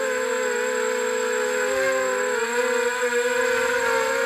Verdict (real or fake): real